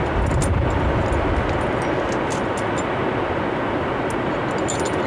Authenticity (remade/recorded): recorded